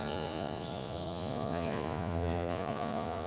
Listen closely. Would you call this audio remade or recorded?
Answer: remade